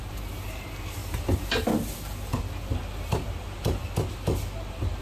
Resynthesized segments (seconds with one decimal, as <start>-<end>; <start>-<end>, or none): none